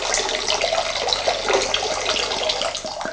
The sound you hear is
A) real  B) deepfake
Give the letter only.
A